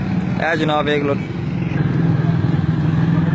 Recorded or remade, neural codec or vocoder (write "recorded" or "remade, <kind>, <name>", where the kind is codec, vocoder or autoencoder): recorded